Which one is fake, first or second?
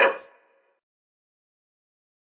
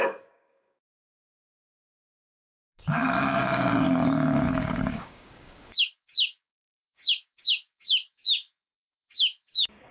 second